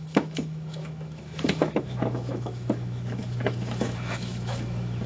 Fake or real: fake